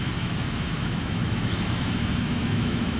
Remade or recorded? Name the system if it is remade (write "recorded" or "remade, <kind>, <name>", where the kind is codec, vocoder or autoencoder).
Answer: remade, autoencoder, DAC-VAE